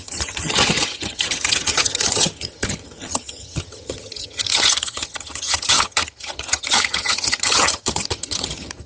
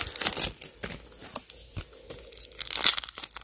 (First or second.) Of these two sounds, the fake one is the first